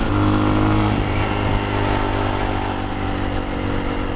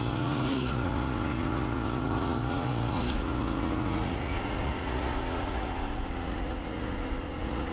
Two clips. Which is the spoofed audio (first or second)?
second